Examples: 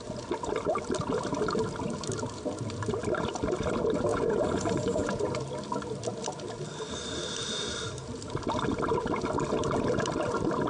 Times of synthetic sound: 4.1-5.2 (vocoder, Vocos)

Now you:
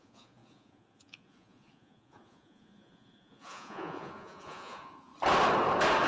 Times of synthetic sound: 0.0-5.1 (vocoder, Vocos)